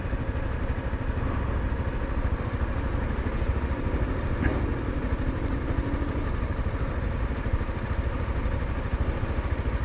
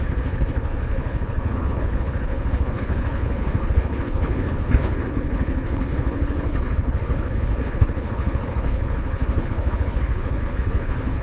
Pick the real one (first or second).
first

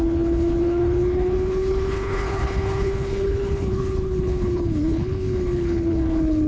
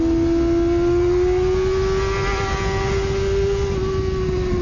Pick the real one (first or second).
second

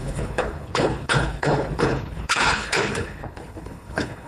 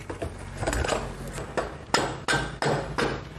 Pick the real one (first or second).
second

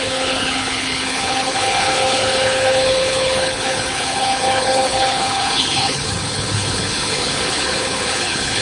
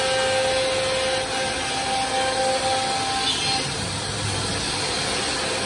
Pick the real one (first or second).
second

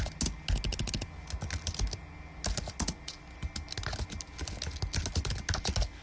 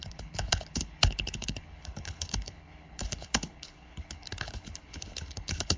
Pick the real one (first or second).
first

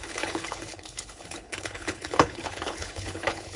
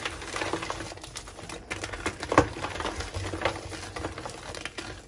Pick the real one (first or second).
second